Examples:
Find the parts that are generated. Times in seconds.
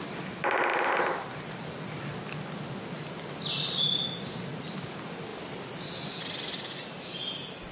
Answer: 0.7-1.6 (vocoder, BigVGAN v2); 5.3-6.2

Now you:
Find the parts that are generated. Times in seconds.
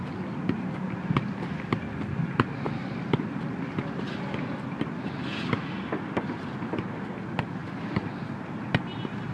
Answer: 2.8-4.1 (vocoder, BigVGAN v2); 7.6-8.2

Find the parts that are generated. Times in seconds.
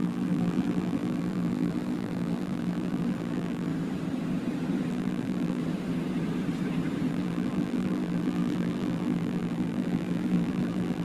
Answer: 0.0-3.7 (vocoder, BigVGAN v2); 4.9-5.6; 7.1-11.0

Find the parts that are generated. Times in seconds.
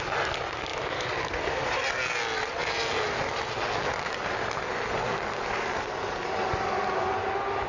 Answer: 0.7-1.2 (vocoder, BigVGAN v2); 2.6-4.3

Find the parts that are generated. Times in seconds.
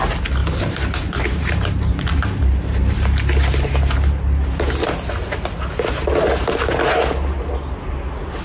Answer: 0.4-2.9 (vocoder, BigVGAN v2)